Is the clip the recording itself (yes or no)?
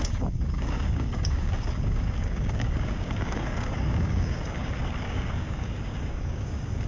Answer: no